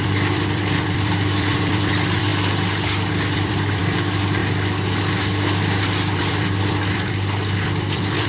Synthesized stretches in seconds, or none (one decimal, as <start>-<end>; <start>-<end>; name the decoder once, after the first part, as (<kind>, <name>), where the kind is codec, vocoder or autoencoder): 0.0-2.3 (vocoder, BigVGAN v2); 3.1-4.4; 6.2-8.3